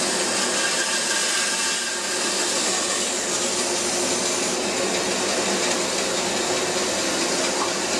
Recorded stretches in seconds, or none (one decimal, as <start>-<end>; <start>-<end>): 0.0-8.0